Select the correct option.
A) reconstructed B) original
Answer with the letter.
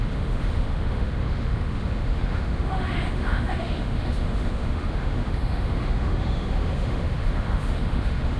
A